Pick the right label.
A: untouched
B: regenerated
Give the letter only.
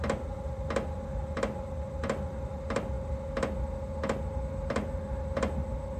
A